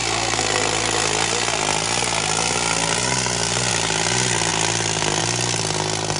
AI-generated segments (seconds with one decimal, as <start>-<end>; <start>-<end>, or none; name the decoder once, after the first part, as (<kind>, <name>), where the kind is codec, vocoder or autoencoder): none